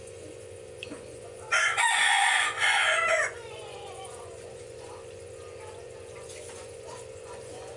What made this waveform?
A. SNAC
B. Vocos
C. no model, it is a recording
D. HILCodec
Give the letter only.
B